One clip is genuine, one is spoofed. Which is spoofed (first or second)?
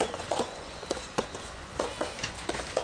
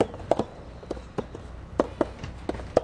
first